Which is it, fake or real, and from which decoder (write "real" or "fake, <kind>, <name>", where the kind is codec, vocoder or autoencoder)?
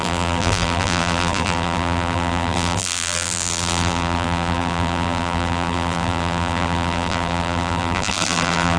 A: fake, vocoder, BigVGAN v2